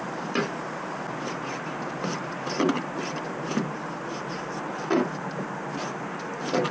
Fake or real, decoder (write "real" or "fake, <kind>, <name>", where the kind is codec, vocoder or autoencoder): real